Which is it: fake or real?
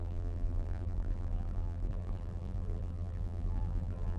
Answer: fake